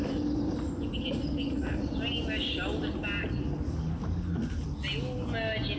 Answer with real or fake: real